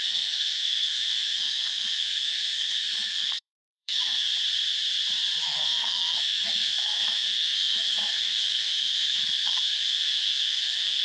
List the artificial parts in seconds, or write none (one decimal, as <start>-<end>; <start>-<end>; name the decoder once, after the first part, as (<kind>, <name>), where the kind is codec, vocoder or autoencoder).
0.0-4.3 (codec, SNAC); 5.4-11.0

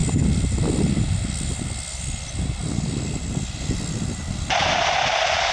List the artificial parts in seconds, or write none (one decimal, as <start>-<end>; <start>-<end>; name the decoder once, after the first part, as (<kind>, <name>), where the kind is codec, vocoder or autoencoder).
none

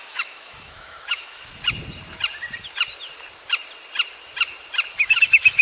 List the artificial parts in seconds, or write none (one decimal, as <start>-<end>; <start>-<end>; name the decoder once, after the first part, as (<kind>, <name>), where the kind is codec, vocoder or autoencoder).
0.0-1.5 (autoencoder, DAC-VAE); 4.9-5.6

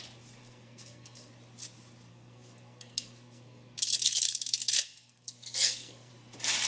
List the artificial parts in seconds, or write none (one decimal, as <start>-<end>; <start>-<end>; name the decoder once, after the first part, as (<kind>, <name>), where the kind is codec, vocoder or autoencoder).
0.4-1.3 (codec, SNAC); 2.1-6.1

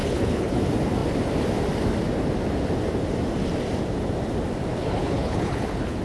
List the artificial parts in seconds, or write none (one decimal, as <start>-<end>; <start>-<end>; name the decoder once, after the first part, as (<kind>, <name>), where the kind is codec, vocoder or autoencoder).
0.0-0.6 (codec, HILCodec); 4.7-6.0

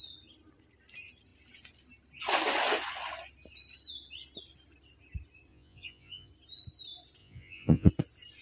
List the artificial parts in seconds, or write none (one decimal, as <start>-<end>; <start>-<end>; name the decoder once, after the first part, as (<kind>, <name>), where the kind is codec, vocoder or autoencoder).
5.5-6.3 (vocoder, Vocos); 7.2-7.9